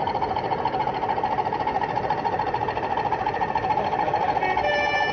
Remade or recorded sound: recorded